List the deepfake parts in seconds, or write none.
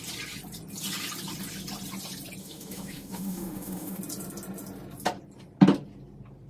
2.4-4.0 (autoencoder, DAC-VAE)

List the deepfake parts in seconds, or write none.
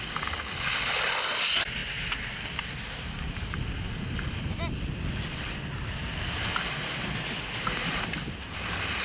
none